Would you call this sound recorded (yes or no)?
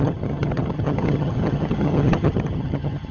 no